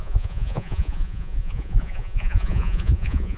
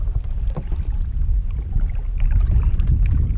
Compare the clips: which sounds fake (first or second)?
first